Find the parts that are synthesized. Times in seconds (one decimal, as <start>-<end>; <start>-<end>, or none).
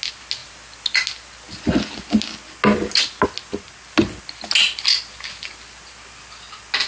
none